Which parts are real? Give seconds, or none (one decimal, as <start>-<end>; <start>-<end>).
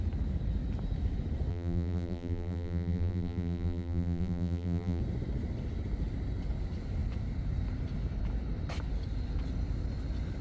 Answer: 0.0-1.5; 5.0-10.4